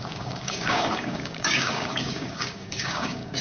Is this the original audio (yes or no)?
no